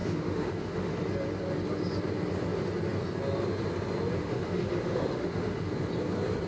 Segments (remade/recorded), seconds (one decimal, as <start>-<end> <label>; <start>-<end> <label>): 0.0-0.9 remade; 0.9-4.2 recorded; 4.2-5.7 remade; 5.7-6.5 recorded